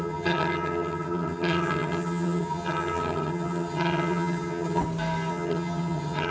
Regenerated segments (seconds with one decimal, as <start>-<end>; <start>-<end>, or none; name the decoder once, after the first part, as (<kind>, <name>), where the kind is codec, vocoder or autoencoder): 0.0-4.8 (vocoder, HiFi-GAN); 5.3-6.3